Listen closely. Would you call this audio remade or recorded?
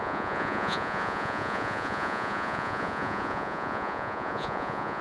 remade